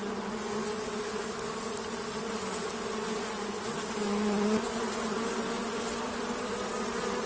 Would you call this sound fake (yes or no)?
no